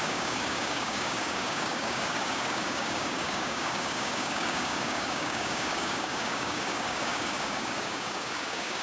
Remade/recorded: remade